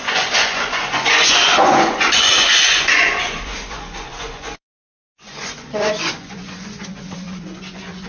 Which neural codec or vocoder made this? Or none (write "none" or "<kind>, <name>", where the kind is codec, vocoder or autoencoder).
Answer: vocoder, Vocos